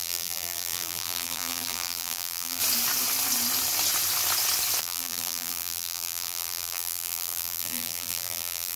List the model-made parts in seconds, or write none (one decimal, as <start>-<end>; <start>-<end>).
0.0-2.6; 4.8-8.8